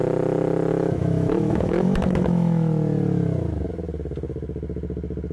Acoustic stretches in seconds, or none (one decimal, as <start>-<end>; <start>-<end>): 0.0-0.7; 2.7-5.3

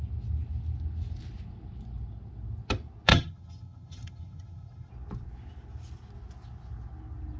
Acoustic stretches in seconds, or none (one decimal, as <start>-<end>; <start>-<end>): 0.0-3.1; 4.9-7.4